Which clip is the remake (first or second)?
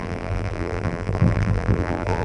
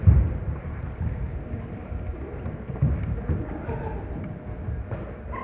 first